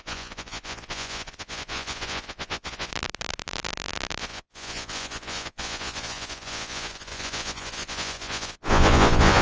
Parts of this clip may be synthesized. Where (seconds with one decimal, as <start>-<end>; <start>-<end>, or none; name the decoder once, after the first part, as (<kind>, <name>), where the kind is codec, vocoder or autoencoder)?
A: 0.0-2.9 (vocoder, Vocos); 4.2-9.4